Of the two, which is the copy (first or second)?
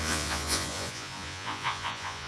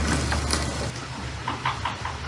first